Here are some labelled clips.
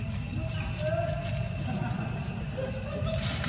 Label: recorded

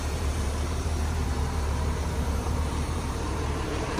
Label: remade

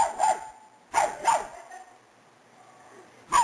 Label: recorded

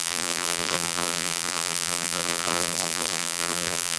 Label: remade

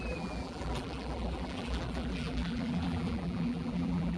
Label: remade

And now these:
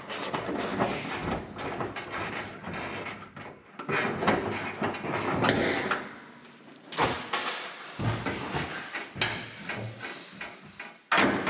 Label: recorded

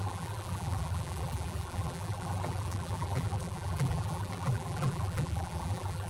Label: remade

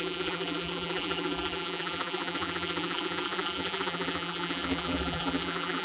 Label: remade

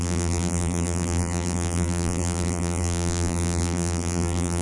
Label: remade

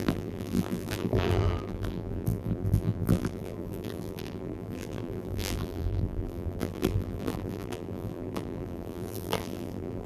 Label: remade